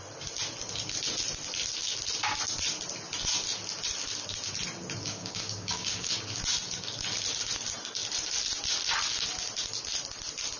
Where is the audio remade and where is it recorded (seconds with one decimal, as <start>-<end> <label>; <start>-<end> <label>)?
0.0-5.0 recorded; 5.0-6.2 remade; 6.2-10.6 recorded